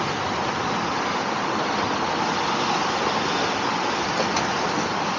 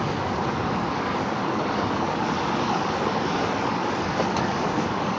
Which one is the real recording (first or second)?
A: first